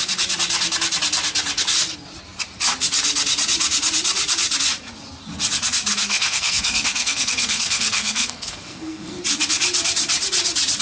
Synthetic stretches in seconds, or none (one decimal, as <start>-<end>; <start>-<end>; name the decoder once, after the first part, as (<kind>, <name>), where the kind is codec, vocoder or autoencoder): 6.0-9.2 (codec, SNAC)